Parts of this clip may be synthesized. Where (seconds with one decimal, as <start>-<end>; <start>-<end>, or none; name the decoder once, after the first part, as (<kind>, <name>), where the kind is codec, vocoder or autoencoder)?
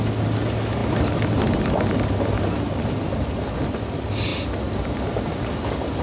none